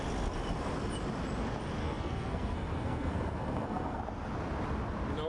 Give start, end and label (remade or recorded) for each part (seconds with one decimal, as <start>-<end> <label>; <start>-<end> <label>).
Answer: 0.0-1.8 recorded; 1.8-4.0 remade; 4.0-5.3 recorded